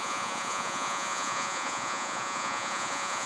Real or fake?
fake